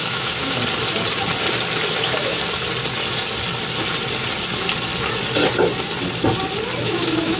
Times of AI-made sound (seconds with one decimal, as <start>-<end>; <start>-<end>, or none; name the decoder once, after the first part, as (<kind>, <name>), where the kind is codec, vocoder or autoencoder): 0.0-0.6 (autoencoder, DAC-VAE); 1.9-2.4; 6.8-7.4